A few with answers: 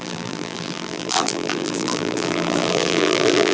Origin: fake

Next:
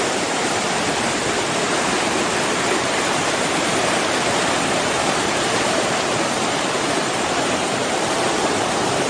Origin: fake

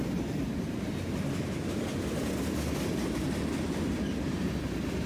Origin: real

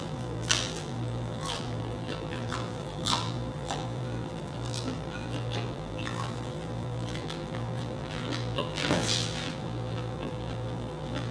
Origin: fake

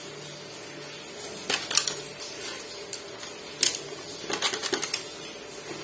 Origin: real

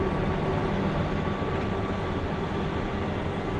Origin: real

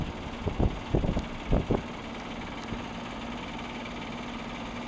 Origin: real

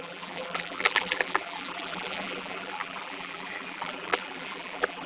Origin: fake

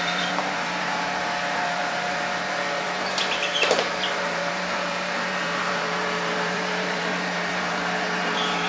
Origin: fake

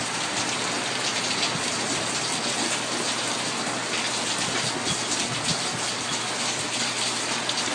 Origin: real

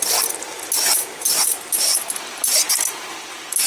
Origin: real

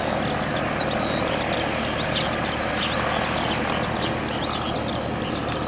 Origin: real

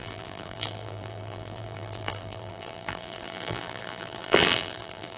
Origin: fake